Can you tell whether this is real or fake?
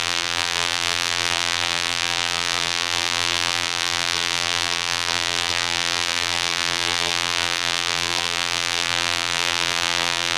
fake